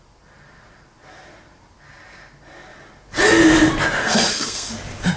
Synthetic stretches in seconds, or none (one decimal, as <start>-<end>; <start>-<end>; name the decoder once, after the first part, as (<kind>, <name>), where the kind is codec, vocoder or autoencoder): 4.0-4.7 (codec, SNAC)